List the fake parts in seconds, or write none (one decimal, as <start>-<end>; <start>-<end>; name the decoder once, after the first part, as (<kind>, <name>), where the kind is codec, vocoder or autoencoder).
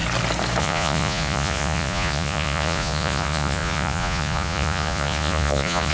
0.6-5.9 (vocoder, Vocos)